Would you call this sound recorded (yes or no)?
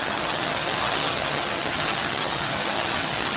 no